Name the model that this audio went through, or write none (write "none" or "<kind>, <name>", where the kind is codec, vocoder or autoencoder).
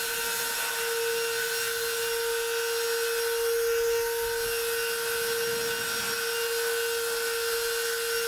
none